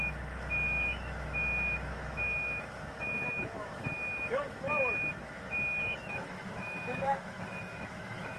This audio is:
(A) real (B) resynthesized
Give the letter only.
B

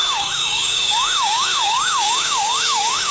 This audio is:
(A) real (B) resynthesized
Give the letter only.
B